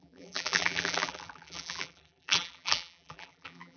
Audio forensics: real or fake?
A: fake